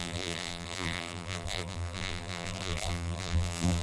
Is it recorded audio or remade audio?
remade